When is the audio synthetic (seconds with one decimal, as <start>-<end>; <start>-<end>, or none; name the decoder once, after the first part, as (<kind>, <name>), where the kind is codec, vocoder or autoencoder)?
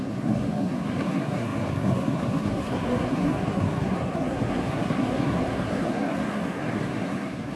0.0-7.6 (codec, SNAC)